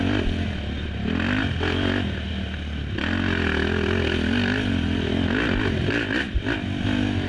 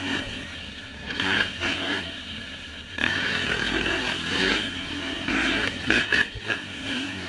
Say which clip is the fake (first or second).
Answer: second